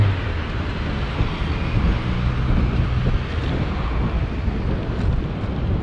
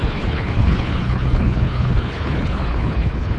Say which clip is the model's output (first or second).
second